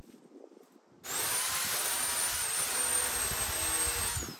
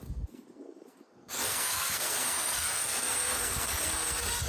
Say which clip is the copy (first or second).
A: second